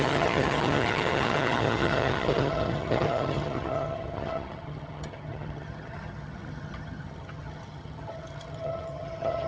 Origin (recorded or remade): remade